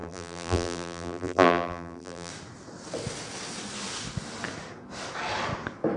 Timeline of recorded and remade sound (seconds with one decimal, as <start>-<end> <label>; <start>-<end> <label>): 0.0-2.3 remade; 2.3-6.0 recorded